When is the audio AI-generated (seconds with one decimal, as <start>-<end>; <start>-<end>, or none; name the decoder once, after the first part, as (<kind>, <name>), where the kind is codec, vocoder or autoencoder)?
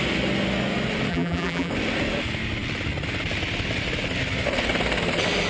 1.1-1.7 (vocoder, BigVGAN v2)